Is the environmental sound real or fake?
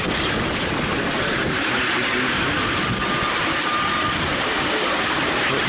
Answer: real